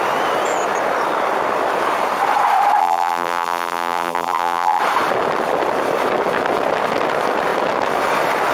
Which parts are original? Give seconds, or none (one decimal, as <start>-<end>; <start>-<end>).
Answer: 0.0-2.8; 4.8-8.5